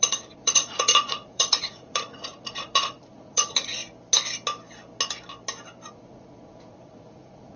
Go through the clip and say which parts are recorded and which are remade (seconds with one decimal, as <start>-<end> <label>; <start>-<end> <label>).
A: 0.0-3.8 remade; 3.8-5.9 recorded; 5.9-7.6 remade